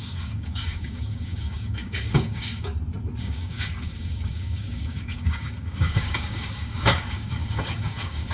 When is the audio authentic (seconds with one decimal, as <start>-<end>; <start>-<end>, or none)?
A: 2.7-3.2